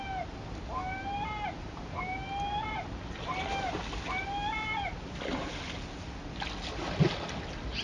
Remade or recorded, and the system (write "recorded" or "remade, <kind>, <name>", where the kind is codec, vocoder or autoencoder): recorded